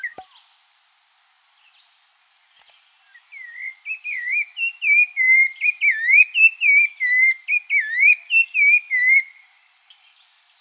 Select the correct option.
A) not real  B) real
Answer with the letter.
B